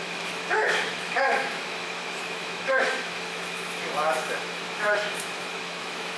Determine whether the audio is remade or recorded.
remade